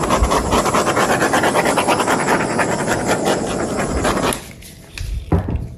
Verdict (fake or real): real